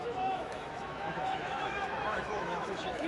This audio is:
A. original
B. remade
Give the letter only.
B